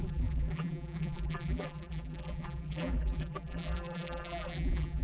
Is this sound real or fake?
fake